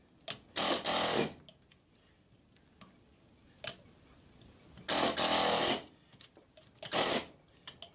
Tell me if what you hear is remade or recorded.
recorded